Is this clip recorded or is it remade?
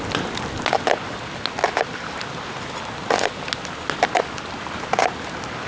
recorded